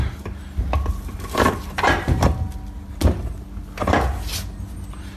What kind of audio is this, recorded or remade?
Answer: recorded